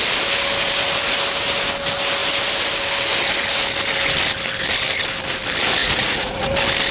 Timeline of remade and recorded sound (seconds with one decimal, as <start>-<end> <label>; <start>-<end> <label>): 0.0-5.8 recorded; 5.8-6.5 remade; 6.5-6.9 recorded